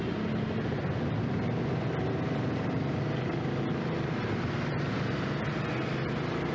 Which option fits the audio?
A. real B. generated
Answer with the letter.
A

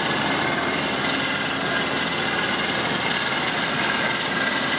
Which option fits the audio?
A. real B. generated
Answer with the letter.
A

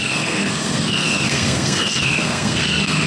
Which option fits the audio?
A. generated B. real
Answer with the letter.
A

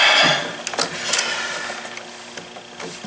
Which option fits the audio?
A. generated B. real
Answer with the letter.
B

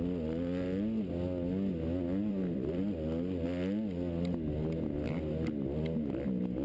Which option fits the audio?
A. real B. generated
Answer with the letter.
A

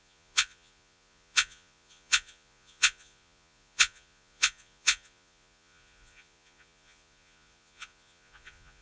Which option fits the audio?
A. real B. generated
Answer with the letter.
B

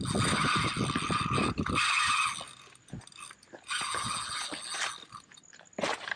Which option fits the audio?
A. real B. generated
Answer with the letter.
A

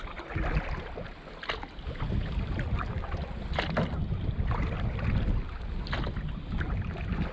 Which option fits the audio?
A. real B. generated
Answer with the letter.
A